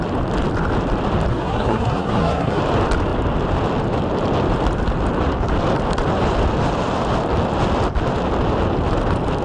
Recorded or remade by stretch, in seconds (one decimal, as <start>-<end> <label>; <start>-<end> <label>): 0.0-1.3 recorded; 1.3-2.6 remade; 2.6-9.4 recorded